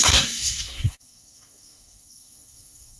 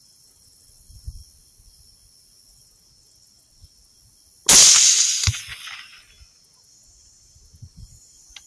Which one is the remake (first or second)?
first